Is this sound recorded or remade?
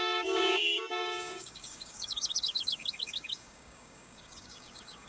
remade